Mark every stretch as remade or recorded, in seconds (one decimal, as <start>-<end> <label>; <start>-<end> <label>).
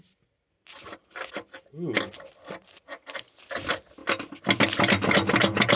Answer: 0.0-5.8 recorded